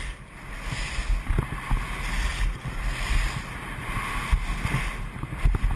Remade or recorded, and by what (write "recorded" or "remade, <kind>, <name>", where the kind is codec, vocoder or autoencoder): recorded